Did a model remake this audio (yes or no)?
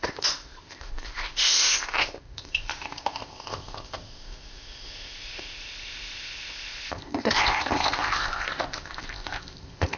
yes